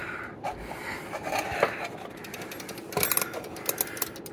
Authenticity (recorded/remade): recorded